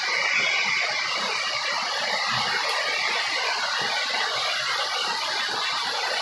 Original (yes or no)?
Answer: yes